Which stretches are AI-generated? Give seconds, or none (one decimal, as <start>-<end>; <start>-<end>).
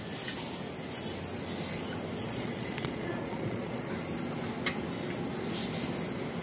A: 2.2-3.9